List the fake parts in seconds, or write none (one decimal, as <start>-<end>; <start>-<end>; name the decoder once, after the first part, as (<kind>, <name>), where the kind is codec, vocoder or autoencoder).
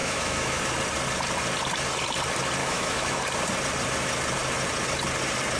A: 0.0-0.6 (autoencoder, DAC-VAE); 2.6-3.2